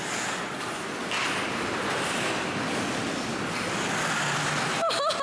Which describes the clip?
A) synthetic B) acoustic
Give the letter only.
B